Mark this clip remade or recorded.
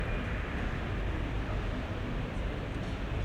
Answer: recorded